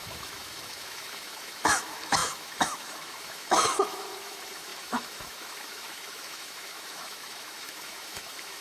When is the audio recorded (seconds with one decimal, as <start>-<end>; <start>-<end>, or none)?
none